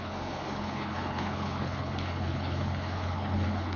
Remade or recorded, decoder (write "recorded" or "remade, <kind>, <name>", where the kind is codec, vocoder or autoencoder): remade, codec, HILCodec